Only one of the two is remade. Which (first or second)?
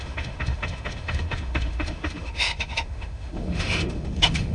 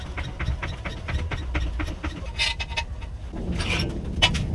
first